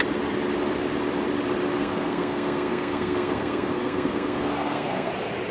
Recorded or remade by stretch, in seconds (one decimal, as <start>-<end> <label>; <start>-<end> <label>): 0.0-1.8 recorded; 1.8-5.1 remade; 5.1-5.5 recorded